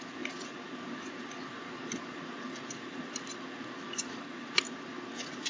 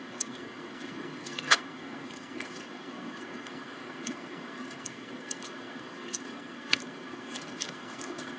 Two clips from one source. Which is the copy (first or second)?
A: second